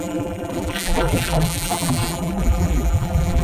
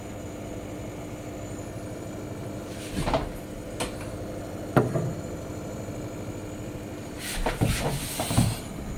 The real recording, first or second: second